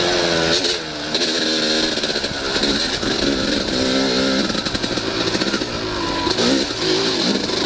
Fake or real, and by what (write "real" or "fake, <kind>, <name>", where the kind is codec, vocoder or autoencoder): real